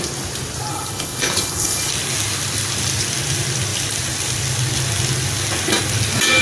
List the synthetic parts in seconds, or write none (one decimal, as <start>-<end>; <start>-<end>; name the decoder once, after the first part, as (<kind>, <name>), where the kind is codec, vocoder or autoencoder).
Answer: 0.7-1.9 (codec, HILCodec)